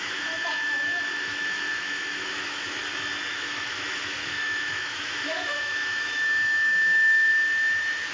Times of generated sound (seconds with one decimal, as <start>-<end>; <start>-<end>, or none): 0.0-2.8; 3.3-7.3